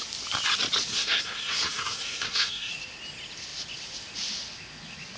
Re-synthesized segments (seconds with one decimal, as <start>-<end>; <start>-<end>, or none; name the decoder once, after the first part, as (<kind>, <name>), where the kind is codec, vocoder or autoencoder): 0.9-2.7 (codec, SNAC)